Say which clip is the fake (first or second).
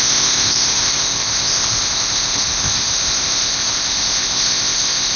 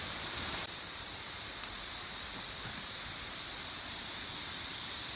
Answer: first